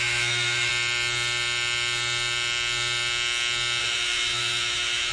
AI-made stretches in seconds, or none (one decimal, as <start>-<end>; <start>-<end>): 0.0-0.7; 3.8-5.1